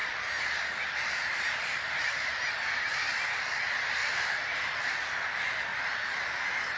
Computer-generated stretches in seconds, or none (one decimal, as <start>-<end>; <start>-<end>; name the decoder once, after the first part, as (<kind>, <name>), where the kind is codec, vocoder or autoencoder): none